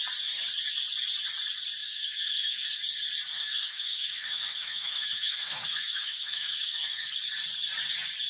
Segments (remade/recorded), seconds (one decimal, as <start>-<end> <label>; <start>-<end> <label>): 0.0-1.8 recorded; 1.8-2.8 remade; 2.8-3.3 recorded; 3.3-7.1 remade; 7.1-8.3 recorded